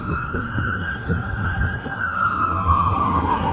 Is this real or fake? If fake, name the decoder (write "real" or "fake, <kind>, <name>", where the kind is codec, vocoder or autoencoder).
fake, codec, SNAC